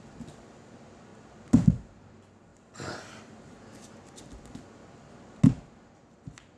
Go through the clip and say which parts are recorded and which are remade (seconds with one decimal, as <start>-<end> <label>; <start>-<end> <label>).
0.0-6.6 recorded